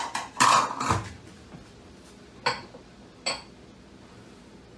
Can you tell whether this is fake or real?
real